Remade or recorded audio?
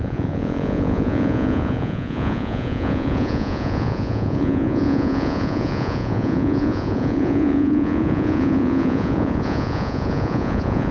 remade